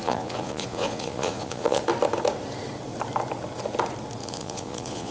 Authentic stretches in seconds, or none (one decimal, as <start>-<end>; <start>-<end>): 1.8-4.2